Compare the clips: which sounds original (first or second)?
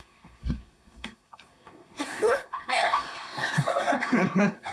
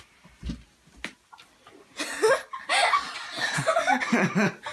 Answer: second